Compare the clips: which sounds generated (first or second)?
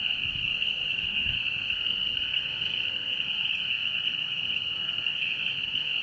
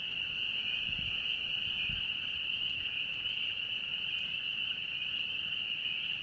first